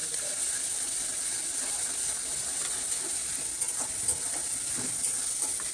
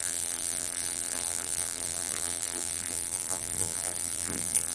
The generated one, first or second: second